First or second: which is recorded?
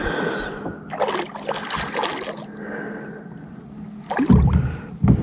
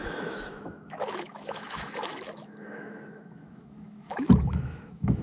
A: first